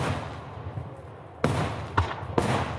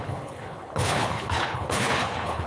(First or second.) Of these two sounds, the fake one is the second